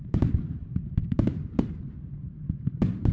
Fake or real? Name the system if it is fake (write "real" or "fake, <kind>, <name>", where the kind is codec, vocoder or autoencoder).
fake, vocoder, BigVGAN v2